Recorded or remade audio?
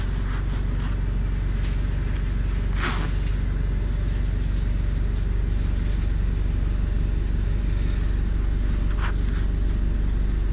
recorded